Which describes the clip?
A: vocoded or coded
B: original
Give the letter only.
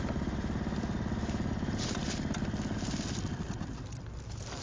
B